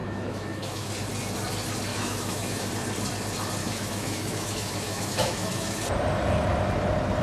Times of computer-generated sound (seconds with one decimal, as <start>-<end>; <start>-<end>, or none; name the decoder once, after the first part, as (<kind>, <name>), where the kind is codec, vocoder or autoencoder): 0.0-0.9 (autoencoder, DAC-VAE); 1.9-2.7; 3.6-5.8